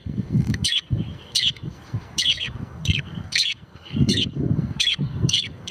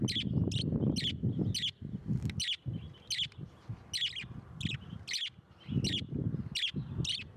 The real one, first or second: second